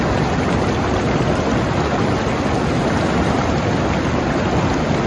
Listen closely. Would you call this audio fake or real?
real